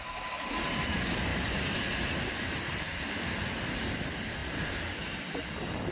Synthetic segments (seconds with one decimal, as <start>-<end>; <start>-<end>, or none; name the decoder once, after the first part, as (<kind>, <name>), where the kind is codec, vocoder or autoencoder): none